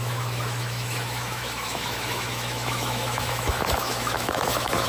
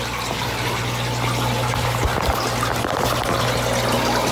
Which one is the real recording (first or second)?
second